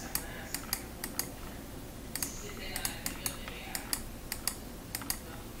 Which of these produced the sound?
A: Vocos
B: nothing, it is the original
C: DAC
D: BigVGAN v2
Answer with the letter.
B